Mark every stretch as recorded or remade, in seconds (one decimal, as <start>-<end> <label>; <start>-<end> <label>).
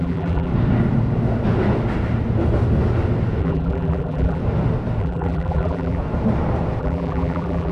0.0-0.5 remade; 0.5-3.4 recorded; 3.4-4.4 remade; 4.4-5.0 recorded; 5.0-6.0 remade; 6.0-6.8 recorded; 6.8-7.7 remade